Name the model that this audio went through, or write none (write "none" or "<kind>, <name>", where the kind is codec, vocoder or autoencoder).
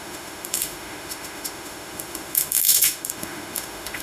autoencoder, DAC-VAE